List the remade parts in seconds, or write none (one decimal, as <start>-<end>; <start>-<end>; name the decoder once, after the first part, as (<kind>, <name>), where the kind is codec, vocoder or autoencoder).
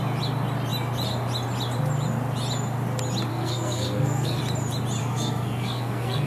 3.3-4.4 (codec, SNAC); 5.0-6.3